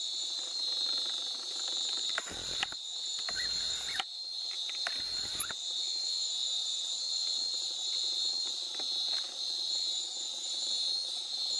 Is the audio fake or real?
fake